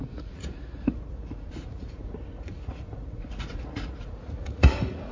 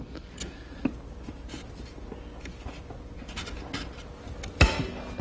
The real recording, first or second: second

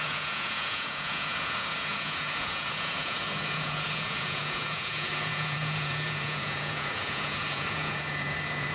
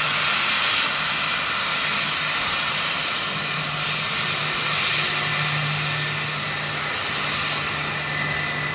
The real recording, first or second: second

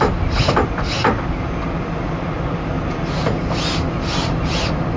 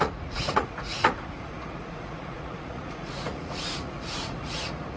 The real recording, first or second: first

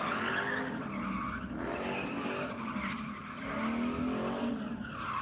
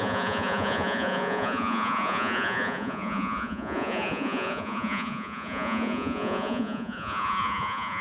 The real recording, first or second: first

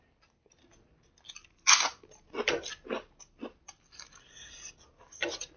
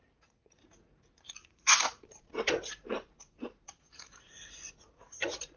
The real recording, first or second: first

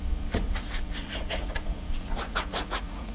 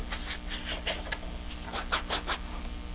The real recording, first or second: second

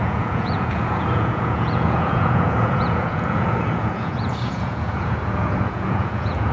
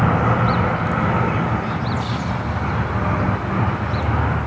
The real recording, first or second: second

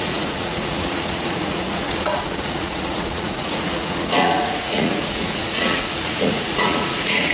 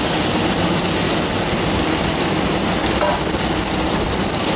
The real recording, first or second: second